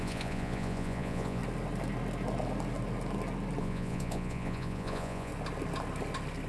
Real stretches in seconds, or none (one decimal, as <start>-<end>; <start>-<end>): 1.4-3.6; 5.3-6.5